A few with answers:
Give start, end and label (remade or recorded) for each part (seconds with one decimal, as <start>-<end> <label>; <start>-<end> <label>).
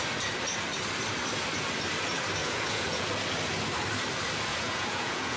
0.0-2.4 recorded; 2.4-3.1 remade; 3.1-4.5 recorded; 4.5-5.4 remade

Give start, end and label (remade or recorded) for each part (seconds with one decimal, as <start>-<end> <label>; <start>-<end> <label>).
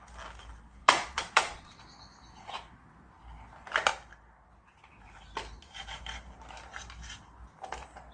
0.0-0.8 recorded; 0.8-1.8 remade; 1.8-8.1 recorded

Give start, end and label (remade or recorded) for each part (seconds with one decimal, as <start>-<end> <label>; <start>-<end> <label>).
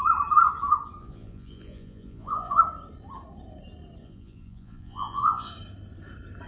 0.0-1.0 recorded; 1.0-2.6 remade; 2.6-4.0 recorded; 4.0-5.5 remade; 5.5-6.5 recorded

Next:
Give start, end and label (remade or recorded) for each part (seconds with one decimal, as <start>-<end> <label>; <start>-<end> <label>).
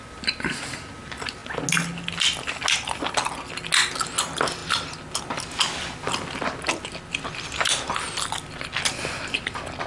0.0-9.9 recorded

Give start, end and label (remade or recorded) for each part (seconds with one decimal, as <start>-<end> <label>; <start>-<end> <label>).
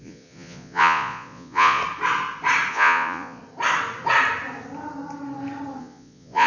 0.0-1.8 remade; 1.8-2.7 recorded; 2.7-3.4 remade; 3.4-5.8 recorded; 5.8-6.5 remade